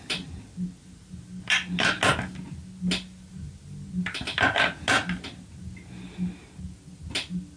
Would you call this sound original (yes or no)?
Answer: yes